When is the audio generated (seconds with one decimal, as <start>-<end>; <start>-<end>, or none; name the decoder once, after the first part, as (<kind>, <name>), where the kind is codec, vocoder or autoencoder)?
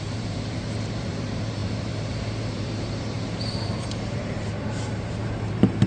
0.0-5.9 (vocoder, BigVGAN v2)